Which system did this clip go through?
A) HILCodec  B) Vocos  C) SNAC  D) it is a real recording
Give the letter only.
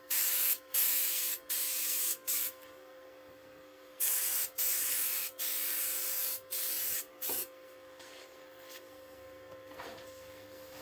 C